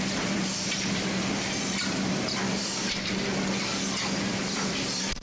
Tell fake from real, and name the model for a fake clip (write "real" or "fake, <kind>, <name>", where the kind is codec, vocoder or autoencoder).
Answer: fake, vocoder, BigVGAN v2